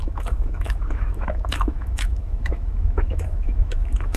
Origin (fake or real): fake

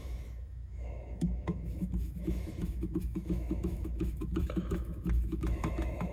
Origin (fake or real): fake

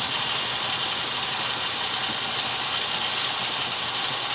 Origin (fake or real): real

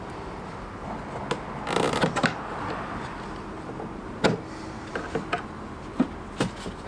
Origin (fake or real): real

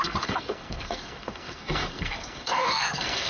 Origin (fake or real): fake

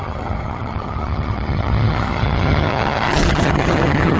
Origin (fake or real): fake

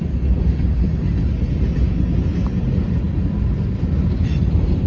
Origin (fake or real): real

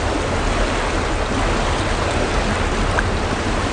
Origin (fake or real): real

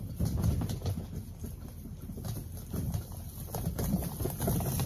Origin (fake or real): real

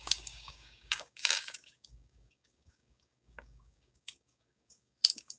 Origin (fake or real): fake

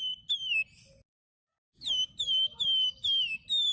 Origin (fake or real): real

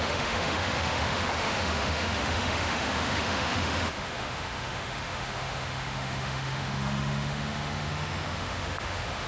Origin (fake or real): fake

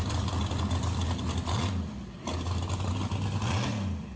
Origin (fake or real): real